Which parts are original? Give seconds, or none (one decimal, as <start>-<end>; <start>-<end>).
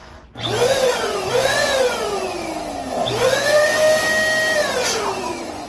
2.4-3.1; 3.7-4.7